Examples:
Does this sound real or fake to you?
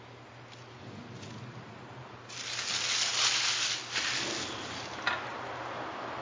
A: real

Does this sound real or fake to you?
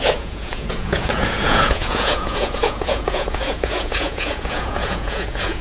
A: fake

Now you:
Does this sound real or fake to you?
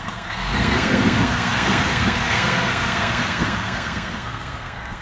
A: fake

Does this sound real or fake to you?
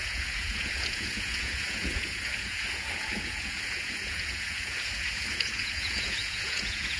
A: fake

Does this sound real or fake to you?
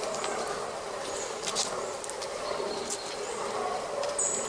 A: real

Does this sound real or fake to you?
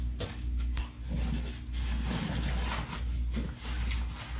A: real